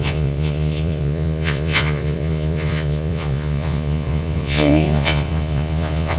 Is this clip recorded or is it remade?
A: remade